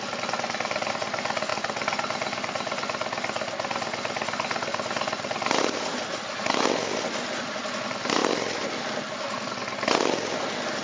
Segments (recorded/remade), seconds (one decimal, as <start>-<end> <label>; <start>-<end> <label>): 0.0-1.5 recorded; 1.5-6.1 remade; 6.1-8.2 recorded; 8.2-8.8 remade; 8.8-10.8 recorded